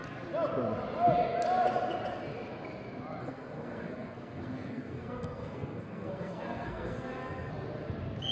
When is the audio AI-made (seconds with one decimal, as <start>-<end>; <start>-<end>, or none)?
3.2-7.5